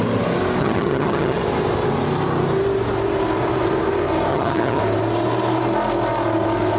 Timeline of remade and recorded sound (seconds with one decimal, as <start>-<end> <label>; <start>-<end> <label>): 0.0-0.6 recorded; 0.6-1.4 remade; 1.4-4.3 recorded; 4.3-4.8 remade; 4.8-6.8 recorded